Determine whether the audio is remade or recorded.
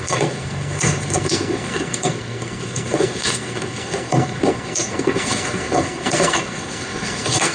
remade